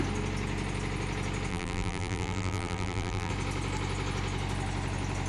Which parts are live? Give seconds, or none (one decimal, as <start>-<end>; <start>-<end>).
0.0-1.5; 3.3-5.3